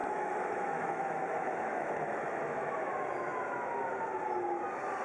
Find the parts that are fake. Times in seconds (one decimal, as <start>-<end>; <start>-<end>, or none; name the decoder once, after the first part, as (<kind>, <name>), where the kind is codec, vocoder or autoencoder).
0.0-2.9 (autoencoder, DAC-VAE)